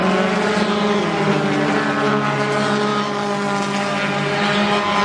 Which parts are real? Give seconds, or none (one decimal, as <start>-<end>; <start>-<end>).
0.5-5.0